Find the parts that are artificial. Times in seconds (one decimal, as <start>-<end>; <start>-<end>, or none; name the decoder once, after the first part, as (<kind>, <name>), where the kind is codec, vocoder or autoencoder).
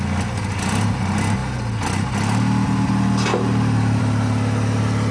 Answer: none